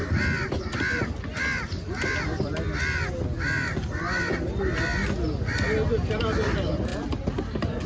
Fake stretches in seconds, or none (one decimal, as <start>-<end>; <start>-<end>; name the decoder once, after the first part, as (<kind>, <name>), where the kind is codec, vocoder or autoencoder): 0.0-4.3 (vocoder, BigVGAN v2); 6.2-6.9